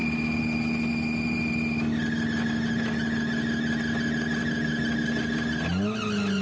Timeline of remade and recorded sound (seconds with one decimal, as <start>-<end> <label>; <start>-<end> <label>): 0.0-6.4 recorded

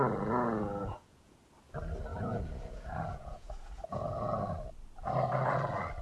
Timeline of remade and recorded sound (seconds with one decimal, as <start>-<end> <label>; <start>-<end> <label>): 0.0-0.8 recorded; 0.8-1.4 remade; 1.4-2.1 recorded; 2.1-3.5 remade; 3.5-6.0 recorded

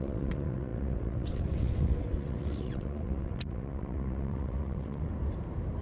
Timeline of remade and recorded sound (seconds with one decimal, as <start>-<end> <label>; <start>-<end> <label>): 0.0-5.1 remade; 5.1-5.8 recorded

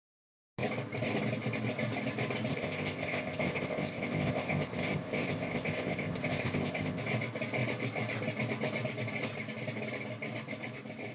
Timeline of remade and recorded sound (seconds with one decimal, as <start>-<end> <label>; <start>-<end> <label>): 0.0-2.5 recorded; 2.5-7.0 remade; 7.0-11.1 recorded

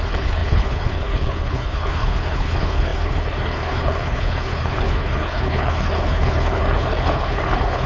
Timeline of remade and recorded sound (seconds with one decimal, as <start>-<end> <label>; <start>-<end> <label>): 0.0-7.9 remade